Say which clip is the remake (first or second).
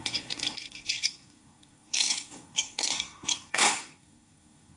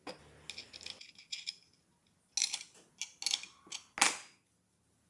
first